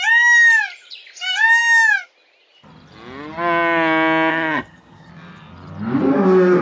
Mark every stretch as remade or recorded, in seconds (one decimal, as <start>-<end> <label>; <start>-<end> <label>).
0.0-4.3 recorded; 4.3-5.1 remade; 5.1-6.6 recorded

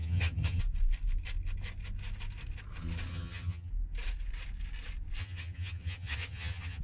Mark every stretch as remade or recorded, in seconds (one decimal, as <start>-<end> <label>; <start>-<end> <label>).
0.0-0.6 remade; 0.6-3.1 recorded; 3.1-3.7 remade; 3.7-5.2 recorded; 5.2-6.8 remade

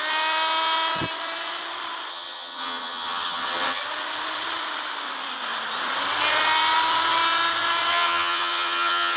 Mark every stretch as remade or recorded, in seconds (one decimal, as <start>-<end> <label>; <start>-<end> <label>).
0.0-2.1 recorded; 2.1-3.8 remade; 3.8-7.9 recorded; 7.9-9.2 remade

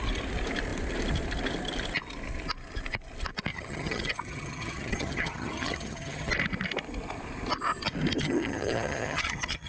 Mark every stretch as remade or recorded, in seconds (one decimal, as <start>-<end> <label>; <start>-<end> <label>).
0.0-3.5 recorded; 3.5-6.3 remade; 6.3-8.2 recorded; 8.2-9.7 remade

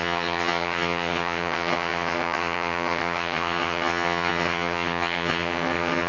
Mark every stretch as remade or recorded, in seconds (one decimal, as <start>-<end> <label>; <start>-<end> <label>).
0.0-6.1 remade

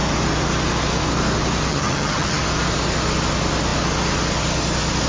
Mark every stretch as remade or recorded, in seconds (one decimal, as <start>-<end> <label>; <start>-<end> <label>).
0.0-1.7 recorded; 1.7-2.4 remade; 2.4-5.1 recorded

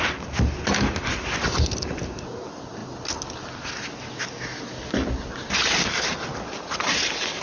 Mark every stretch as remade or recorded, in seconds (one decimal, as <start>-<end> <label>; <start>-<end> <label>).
0.0-7.4 recorded